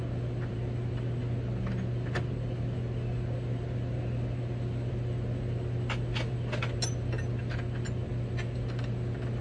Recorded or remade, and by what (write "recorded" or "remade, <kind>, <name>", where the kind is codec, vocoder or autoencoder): recorded